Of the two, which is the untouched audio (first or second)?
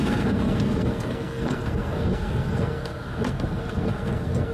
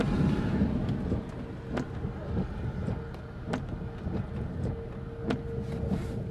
second